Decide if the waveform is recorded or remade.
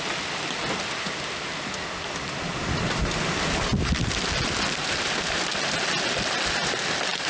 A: recorded